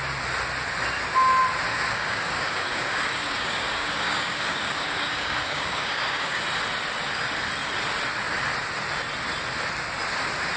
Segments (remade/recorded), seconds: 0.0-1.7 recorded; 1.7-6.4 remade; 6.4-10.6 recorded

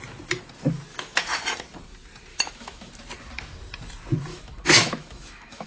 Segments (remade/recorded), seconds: 0.0-0.9 recorded; 0.9-1.4 remade; 1.4-2.3 recorded; 2.3-2.9 remade; 2.9-4.3 recorded; 4.3-5.7 remade